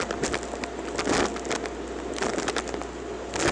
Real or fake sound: real